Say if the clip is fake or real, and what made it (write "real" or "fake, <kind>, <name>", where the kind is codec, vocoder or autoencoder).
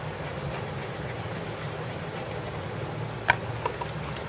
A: real